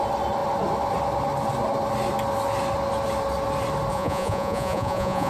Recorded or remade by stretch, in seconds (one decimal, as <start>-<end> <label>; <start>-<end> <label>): 0.0-3.9 recorded; 3.9-5.3 remade